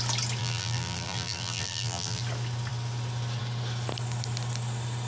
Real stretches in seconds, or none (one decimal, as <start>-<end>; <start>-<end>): 0.0-0.4; 2.2-5.1